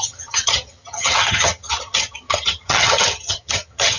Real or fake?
fake